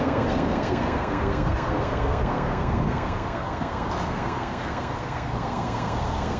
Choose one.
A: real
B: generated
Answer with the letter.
B